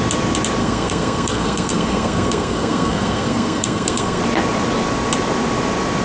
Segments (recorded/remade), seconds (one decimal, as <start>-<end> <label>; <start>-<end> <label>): 0.0-0.6 recorded; 0.6-4.2 remade; 4.2-6.0 recorded

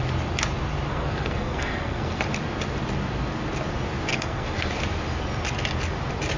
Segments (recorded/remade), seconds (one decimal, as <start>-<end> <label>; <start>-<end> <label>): 0.0-0.9 recorded; 0.9-2.2 remade; 2.2-4.1 recorded; 4.1-4.7 remade; 4.7-6.4 recorded

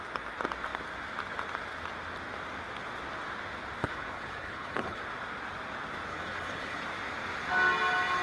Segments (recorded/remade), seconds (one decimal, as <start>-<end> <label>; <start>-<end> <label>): 0.0-3.8 recorded; 3.8-5.0 remade; 5.0-6.1 recorded; 6.1-6.8 remade; 6.8-8.2 recorded

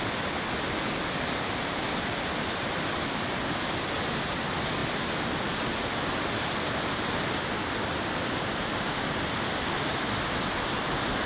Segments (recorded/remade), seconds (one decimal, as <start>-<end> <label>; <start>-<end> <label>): 0.0-11.3 recorded

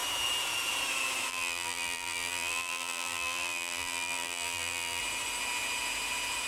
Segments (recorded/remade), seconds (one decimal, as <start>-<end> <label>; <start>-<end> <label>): 0.0-1.3 recorded; 1.3-5.0 remade; 5.0-6.5 recorded

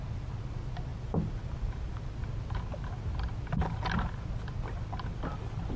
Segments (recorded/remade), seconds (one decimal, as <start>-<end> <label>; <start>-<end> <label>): 0.0-0.9 recorded; 0.9-1.9 remade; 1.9-5.8 recorded

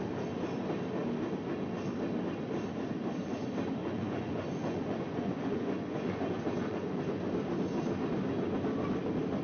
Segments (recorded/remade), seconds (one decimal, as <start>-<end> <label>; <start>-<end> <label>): 0.0-3.8 recorded; 3.8-7.0 remade; 7.0-9.4 recorded

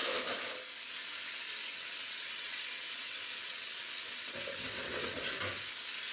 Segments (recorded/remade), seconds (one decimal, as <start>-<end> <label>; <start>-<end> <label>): 0.0-1.6 recorded; 1.6-5.3 remade; 5.3-6.1 recorded